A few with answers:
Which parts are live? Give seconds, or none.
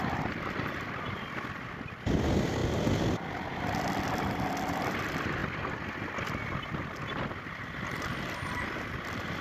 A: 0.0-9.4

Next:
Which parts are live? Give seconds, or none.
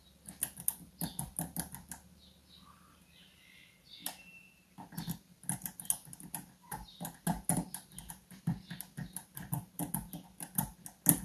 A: 0.0-11.2